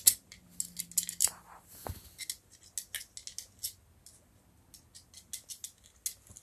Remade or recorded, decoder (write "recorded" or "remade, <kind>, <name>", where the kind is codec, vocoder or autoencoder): recorded